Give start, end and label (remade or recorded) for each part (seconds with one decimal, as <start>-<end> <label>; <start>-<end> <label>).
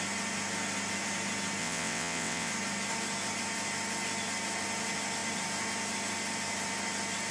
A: 0.0-1.6 recorded; 1.6-2.5 remade; 2.5-7.3 recorded